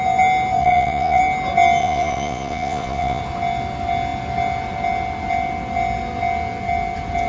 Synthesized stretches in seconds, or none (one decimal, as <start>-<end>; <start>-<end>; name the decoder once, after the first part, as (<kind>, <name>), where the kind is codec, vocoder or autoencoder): 0.6-1.2 (vocoder, Vocos); 1.8-3.2